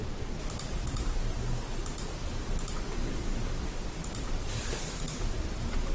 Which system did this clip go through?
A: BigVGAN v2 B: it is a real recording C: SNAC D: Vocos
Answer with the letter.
B